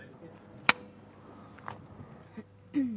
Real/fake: real